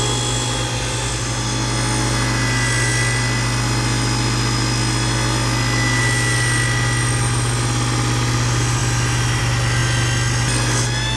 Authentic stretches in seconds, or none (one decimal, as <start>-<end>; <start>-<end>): 0.0-11.2